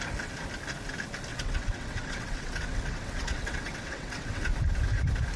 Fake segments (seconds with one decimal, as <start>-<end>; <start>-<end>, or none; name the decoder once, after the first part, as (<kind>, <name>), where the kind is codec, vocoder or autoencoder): 1.3-4.5 (vocoder, WaveNeXt)